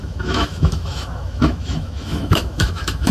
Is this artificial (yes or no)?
yes